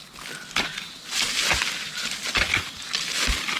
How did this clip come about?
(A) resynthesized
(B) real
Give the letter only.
B